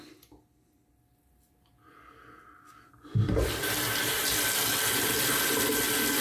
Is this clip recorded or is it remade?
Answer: recorded